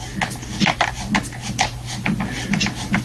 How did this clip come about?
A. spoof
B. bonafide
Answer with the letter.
B